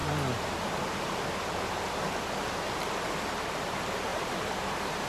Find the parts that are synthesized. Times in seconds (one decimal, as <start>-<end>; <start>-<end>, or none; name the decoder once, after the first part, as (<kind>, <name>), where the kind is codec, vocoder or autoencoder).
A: 4.1-5.1 (vocoder, BigVGAN v2)